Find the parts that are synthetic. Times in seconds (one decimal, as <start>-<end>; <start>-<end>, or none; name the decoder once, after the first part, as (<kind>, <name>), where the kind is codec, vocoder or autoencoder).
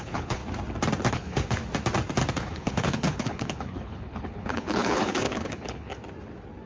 0.0-0.4 (codec, HILCodec); 1.1-1.6; 2.3-5.9